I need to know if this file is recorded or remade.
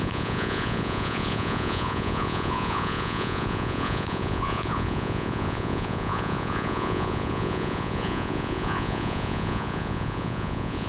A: remade